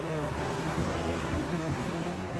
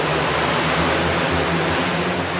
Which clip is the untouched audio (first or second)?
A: second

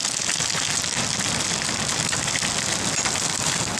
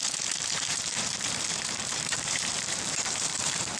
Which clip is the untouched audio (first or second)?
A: first